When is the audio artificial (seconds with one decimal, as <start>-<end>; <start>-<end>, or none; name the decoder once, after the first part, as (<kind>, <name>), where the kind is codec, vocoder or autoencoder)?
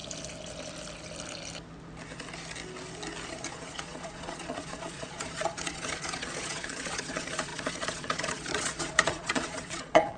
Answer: 3.3-10.2 (vocoder, Vocos)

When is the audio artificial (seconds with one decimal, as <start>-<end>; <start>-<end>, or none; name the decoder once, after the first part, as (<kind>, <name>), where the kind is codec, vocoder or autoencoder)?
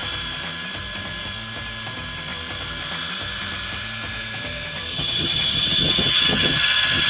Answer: 4.9-7.1 (vocoder, HiFi-GAN)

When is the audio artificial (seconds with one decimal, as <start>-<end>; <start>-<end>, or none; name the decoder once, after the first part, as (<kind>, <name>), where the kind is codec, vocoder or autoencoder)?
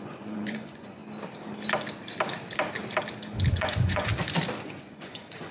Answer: 0.0-1.0 (vocoder, Vocos); 3.5-4.1; 4.6-5.5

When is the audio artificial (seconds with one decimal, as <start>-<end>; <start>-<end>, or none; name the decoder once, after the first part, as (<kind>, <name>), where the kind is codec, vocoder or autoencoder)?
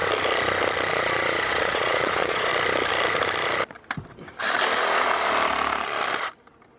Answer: 0.9-2.5 (vocoder, Vocos)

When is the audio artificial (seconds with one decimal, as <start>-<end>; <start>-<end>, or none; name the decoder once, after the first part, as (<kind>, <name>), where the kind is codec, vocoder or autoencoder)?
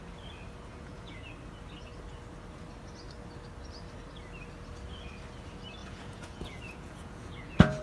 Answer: 0.7-1.3 (vocoder, Vocos); 5.8-7.8